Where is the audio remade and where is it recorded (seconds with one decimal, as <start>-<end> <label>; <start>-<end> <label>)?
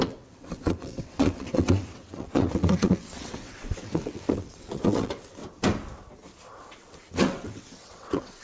0.0-5.4 remade; 5.4-6.8 recorded; 6.8-8.4 remade